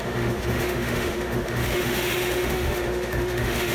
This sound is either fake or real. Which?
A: fake